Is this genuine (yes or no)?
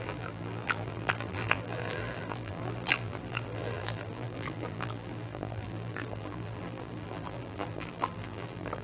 no